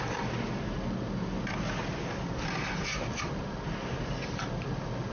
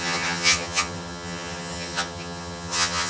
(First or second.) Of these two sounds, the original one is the first